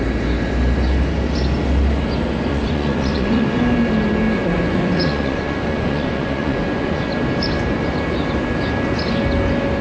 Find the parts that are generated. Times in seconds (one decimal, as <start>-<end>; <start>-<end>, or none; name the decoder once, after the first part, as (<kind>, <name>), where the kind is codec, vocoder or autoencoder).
2.5-3.6 (vocoder, Vocos); 4.4-7.1